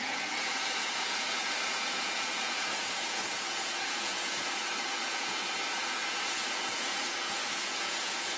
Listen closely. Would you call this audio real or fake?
fake